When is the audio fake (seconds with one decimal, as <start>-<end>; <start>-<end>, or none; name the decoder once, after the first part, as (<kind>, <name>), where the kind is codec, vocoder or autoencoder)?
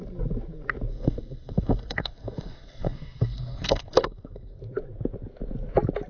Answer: 0.9-4.6 (codec, SNAC)